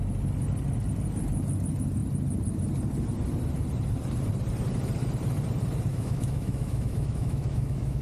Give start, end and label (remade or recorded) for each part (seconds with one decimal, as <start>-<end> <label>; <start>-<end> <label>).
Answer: 0.0-5.9 recorded; 5.9-8.0 remade